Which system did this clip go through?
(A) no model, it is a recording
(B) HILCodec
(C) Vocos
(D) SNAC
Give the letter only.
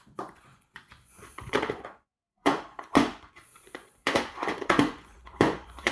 C